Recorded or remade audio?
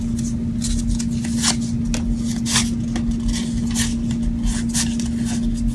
recorded